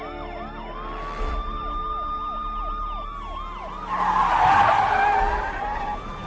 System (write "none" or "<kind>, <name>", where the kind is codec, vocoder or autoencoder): none